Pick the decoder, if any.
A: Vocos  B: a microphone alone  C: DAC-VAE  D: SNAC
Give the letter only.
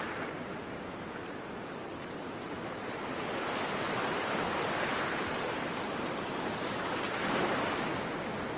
B